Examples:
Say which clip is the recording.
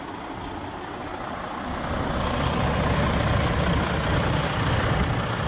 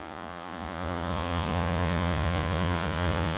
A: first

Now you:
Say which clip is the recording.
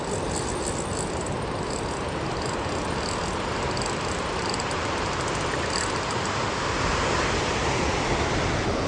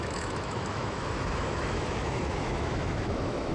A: first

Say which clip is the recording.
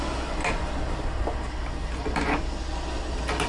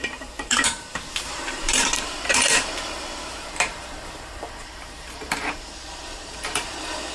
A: first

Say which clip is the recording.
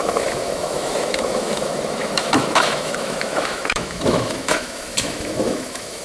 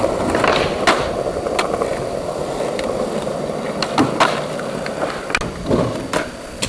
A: second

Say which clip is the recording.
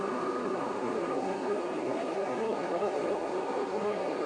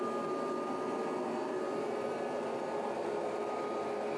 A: second